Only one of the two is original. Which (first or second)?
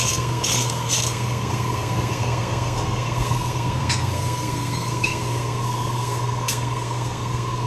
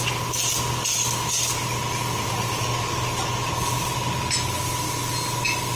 second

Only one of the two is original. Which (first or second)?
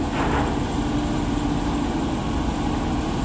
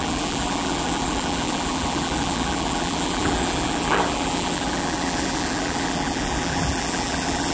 first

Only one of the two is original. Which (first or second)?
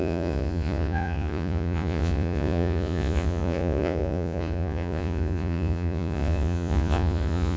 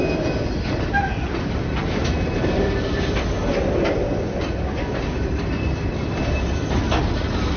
second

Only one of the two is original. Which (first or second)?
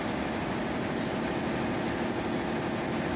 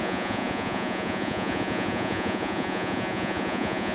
first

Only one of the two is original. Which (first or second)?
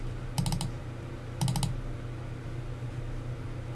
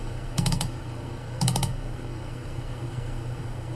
first